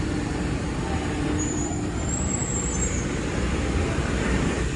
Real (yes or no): no